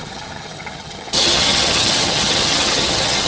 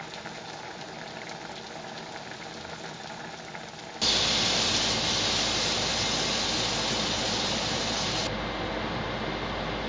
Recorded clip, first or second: second